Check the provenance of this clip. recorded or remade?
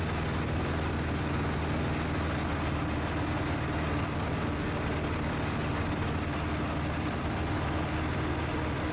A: recorded